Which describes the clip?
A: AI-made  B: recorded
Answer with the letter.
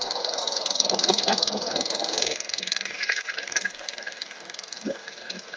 A